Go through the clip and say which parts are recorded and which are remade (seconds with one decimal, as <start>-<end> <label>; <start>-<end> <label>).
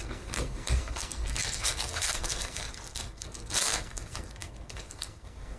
0.0-5.6 remade